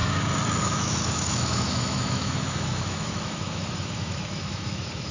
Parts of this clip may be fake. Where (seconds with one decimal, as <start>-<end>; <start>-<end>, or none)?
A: 0.6-5.1